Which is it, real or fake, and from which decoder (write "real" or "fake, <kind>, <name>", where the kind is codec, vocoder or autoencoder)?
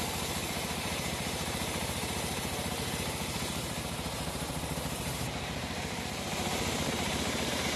fake, vocoder, BigVGAN v2